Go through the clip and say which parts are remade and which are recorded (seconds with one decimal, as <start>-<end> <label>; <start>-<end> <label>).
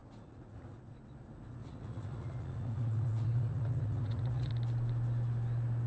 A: 0.0-0.8 remade; 0.8-1.6 recorded; 1.6-4.5 remade; 4.5-5.9 recorded